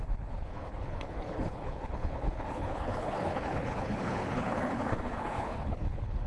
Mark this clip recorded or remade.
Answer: remade